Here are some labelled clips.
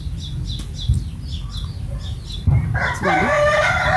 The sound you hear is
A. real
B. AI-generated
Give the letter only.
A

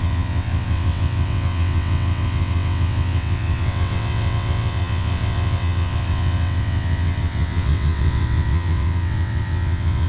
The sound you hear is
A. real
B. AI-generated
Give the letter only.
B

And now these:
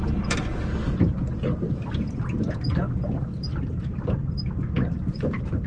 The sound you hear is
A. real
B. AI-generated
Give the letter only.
A